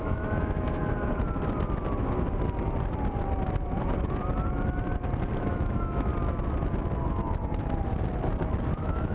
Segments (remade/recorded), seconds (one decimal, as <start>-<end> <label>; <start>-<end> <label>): 0.0-0.8 remade; 0.8-5.4 recorded; 5.4-6.1 remade; 6.1-8.7 recorded; 8.7-9.1 remade